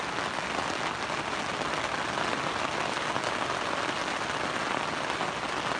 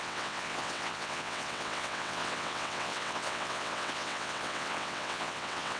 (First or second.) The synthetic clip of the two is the second